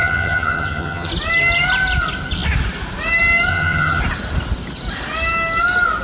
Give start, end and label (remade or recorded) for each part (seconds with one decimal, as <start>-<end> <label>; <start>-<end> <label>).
0.0-1.1 remade; 1.1-3.5 recorded; 3.5-4.0 remade; 4.0-6.0 recorded